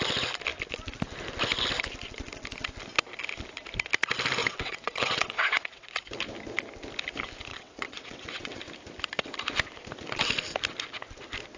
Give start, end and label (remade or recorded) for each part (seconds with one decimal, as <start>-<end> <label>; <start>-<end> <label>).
0.0-4.4 recorded; 4.4-5.9 remade; 5.9-7.5 recorded; 7.5-8.6 remade; 8.6-11.6 recorded